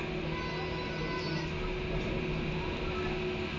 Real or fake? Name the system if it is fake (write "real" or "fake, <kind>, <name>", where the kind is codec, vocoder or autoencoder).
real